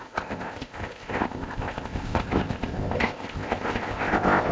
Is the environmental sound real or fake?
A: fake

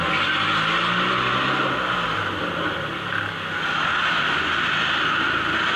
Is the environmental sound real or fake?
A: real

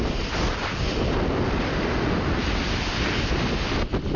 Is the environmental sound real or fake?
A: real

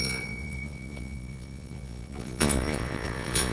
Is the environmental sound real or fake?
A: fake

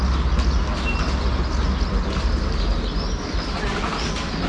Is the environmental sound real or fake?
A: real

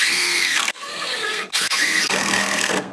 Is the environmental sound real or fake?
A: fake